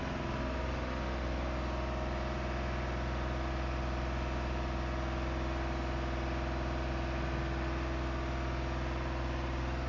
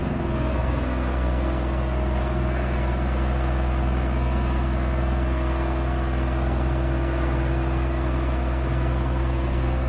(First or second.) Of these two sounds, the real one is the first